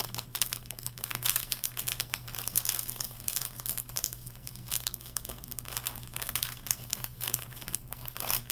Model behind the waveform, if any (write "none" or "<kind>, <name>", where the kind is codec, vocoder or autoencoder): codec, SNAC